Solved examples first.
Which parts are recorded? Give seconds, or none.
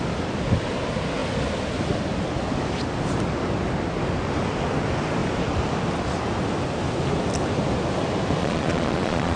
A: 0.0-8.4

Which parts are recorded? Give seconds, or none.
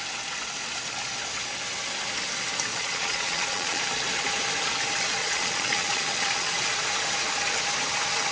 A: 0.0-2.7; 3.8-5.2; 6.5-8.3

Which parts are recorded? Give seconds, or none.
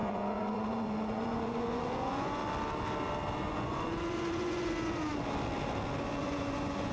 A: 2.4-3.5; 5.1-6.2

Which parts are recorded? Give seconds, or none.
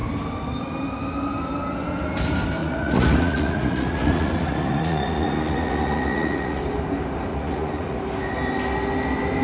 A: 0.0-2.6; 6.6-7.3; 8.0-9.4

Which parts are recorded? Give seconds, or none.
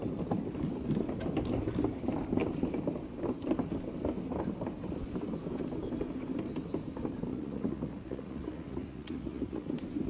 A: 0.0-7.3; 9.7-10.1